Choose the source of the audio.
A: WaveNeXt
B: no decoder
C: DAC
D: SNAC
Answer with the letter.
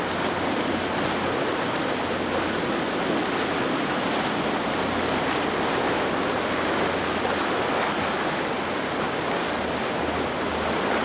B